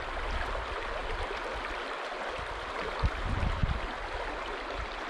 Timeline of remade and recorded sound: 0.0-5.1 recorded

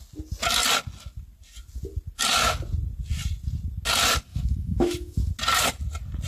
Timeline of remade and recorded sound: 0.0-4.3 recorded; 4.3-5.3 remade; 5.3-6.3 recorded

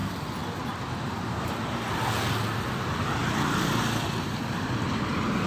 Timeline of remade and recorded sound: 0.0-5.5 recorded

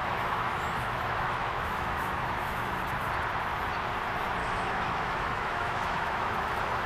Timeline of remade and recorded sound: 0.0-2.8 remade; 2.8-4.4 recorded; 4.4-6.5 remade; 6.5-6.9 recorded

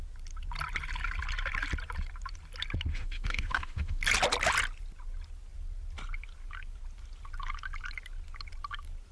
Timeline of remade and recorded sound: 0.0-2.9 recorded; 2.9-4.0 remade; 4.0-9.1 recorded

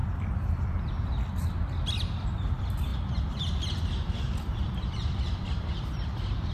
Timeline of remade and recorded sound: 0.0-6.5 recorded

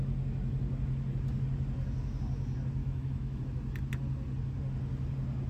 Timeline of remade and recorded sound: 0.0-2.8 recorded; 2.8-3.4 remade; 3.4-5.5 recorded

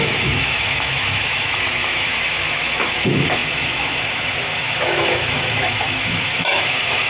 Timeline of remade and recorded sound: 0.0-7.1 remade